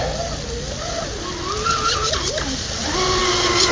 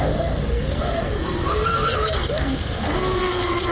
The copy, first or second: second